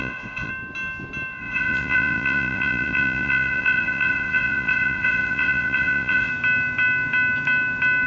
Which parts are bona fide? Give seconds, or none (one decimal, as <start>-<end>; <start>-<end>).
0.5-1.4; 6.3-8.1